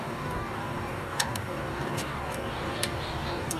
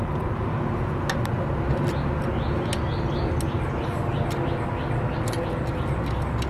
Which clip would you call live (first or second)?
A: second